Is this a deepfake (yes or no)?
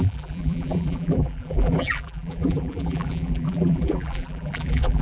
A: yes